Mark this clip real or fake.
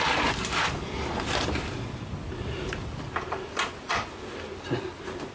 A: real